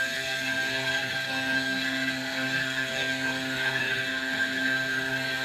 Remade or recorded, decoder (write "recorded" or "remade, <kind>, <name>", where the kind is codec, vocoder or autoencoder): remade, codec, SNAC